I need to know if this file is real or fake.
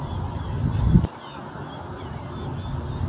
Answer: real